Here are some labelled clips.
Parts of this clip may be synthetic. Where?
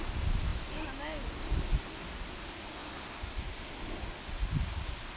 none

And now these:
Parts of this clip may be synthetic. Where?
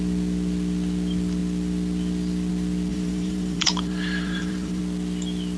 2.9-4.8 (vocoder, BigVGAN v2)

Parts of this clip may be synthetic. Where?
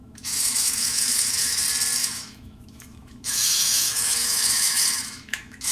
0.0-1.6 (autoencoder, DAC-VAE); 2.0-5.7